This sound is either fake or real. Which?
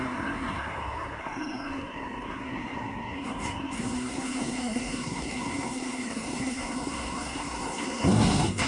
fake